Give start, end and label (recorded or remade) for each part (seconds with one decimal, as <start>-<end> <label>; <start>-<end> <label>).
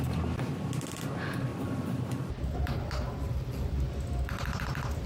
0.0-5.1 recorded